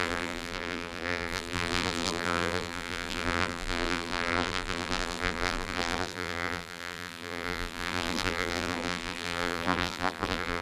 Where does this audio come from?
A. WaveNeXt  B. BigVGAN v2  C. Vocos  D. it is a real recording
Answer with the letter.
B